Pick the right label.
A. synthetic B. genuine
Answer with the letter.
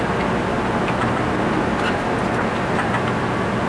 B